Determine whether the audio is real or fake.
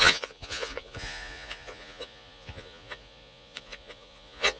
fake